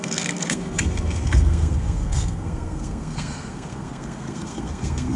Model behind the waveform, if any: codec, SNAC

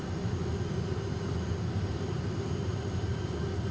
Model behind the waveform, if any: none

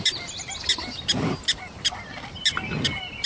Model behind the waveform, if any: none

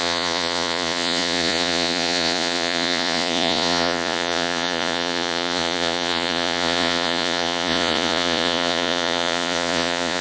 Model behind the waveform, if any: vocoder, Vocos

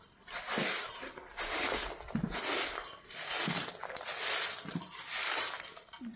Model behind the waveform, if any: vocoder, BigVGAN v2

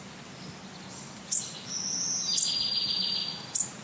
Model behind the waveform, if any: none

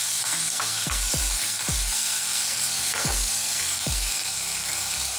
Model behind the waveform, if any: codec, SNAC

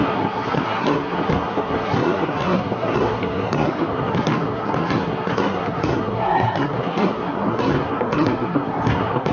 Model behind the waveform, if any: codec, SNAC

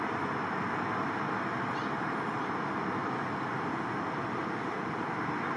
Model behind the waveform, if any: none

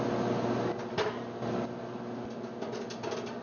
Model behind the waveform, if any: none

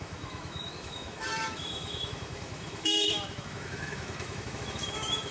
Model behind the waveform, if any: autoencoder, DAC-VAE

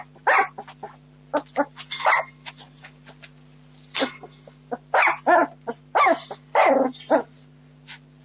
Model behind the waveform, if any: none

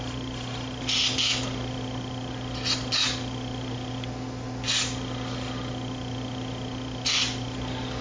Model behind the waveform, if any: none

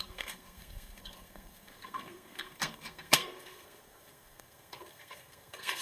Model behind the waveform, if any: codec, SNAC